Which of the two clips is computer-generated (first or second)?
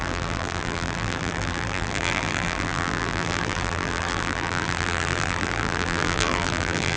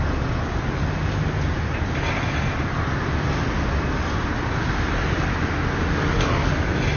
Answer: first